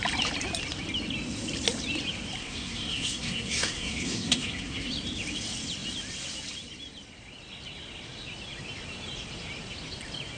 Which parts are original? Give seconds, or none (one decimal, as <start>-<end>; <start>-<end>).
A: 0.0-2.4; 4.9-10.4